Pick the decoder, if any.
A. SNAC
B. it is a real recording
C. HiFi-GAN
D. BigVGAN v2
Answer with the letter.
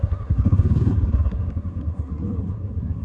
A